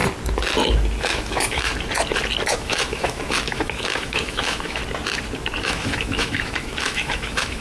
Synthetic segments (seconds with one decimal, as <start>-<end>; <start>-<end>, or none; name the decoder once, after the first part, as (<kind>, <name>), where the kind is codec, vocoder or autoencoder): 1.0-1.7 (autoencoder, DAC-VAE); 2.5-4.8; 5.6-7.6

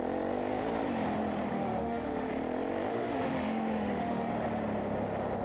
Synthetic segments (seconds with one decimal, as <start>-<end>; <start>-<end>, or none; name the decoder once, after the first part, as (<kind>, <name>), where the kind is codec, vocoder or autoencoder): 1.5-2.3 (autoencoder, DAC-VAE); 2.9-4.3

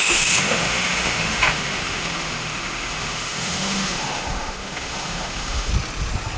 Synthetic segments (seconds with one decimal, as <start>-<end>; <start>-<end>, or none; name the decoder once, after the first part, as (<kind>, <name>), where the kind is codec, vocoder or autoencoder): 0.0-5.7 (autoencoder, DAC-VAE)

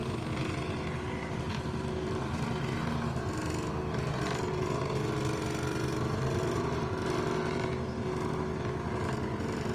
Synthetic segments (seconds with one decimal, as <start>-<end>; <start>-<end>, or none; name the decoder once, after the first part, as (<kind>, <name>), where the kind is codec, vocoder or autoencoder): none

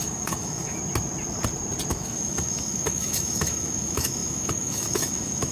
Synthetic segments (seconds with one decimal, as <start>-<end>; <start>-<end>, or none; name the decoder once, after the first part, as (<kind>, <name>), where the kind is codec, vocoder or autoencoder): 0.0-0.8 (autoencoder, DAC-VAE); 1.9-5.5

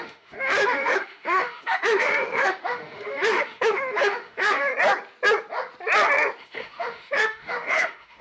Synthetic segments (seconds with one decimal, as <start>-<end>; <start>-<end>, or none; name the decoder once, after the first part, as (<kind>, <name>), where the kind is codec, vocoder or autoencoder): 0.0-4.7 (autoencoder, DAC-VAE); 6.4-8.2

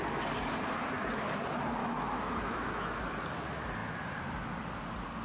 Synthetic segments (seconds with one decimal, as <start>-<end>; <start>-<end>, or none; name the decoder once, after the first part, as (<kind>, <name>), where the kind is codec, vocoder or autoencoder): 1.8-3.0 (autoencoder, DAC-VAE)

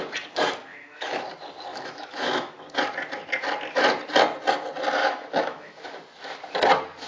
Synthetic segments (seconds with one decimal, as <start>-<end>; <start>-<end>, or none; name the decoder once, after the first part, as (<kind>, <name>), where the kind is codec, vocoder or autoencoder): 0.7-1.2 (autoencoder, DAC-VAE); 1.7-2.6; 5.0-5.9